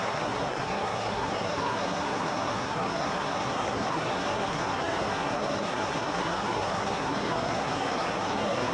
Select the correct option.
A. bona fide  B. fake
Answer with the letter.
B